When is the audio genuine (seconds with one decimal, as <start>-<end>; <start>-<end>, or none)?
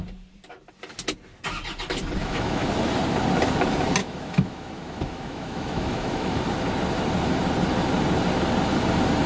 0.0-2.2; 2.7-4.0; 6.4-9.3